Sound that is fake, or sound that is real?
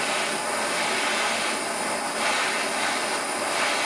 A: real